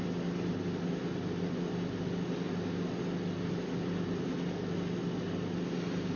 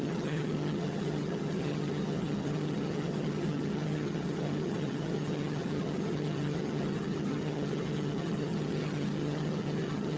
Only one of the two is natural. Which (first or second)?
first